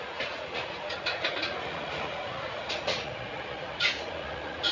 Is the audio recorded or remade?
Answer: remade